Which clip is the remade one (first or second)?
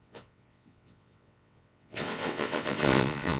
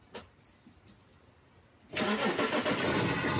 first